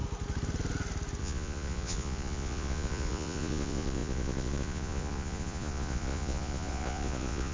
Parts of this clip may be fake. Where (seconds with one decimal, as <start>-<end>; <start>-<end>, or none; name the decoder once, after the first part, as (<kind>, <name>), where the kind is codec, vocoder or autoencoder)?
1.2-7.5 (vocoder, Vocos)

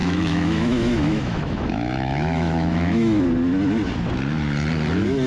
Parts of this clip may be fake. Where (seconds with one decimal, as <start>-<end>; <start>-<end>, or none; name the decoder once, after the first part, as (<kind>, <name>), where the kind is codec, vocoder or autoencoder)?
0.0-3.2 (autoencoder, DAC-VAE)